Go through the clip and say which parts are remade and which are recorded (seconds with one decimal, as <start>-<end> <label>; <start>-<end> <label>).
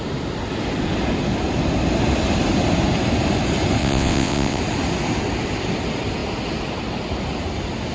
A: 0.0-3.8 recorded; 3.8-4.6 remade; 4.6-7.9 recorded